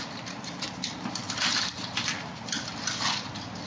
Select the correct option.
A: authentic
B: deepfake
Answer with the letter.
A